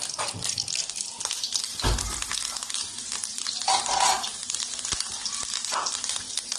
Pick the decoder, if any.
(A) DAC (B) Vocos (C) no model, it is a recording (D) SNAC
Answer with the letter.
C